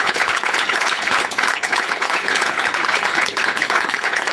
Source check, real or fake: fake